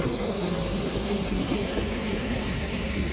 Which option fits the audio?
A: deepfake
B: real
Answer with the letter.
A